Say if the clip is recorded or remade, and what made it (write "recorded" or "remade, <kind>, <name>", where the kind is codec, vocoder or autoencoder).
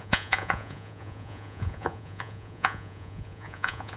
remade, vocoder, Vocos